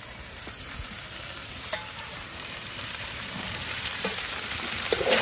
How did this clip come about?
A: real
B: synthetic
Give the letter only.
B